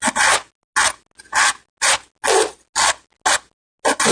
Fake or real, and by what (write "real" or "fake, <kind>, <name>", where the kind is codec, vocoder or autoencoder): real